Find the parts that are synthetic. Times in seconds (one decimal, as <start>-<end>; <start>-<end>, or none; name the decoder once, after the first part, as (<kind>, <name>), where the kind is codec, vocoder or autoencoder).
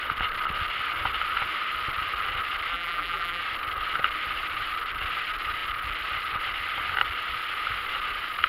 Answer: 2.7-3.4 (vocoder, BigVGAN v2)